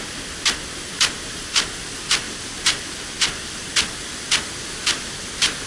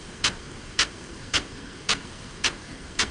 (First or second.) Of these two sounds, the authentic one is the first